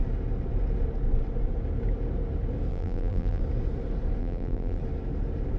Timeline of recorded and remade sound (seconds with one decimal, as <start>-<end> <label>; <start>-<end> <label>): 0.0-2.7 recorded; 2.7-3.4 remade; 3.4-4.2 recorded; 4.2-4.8 remade; 4.8-5.6 recorded